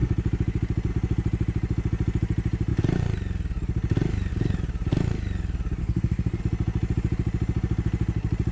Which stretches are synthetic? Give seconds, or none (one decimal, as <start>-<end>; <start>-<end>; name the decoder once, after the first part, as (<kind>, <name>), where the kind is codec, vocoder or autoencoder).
5.8-6.4 (codec, SNAC)